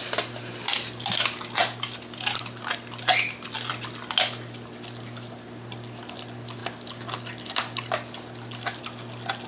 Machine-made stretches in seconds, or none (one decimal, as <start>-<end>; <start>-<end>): none